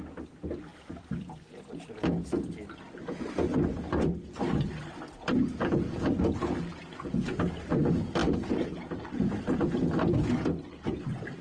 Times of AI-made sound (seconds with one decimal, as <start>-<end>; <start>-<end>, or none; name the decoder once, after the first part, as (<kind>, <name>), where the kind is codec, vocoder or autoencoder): 8.2-8.9 (vocoder, BigVGAN v2)